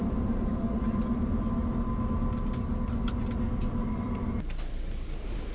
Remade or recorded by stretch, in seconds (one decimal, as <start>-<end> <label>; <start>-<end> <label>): 0.0-3.3 recorded; 3.3-5.5 remade